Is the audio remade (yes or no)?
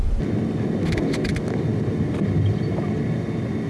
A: no